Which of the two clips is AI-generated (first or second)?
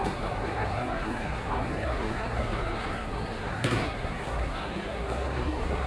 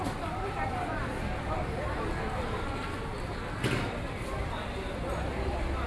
first